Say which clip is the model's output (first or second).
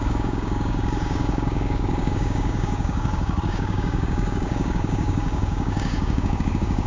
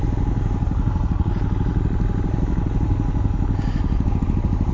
first